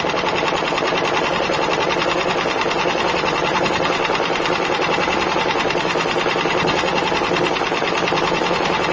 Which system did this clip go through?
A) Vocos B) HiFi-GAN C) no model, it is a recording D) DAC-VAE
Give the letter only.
C